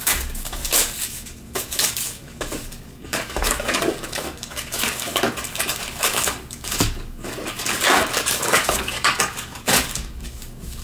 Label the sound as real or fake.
fake